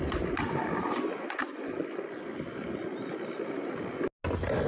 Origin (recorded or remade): recorded